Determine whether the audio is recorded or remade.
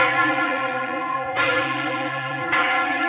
remade